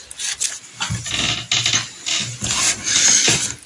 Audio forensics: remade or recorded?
recorded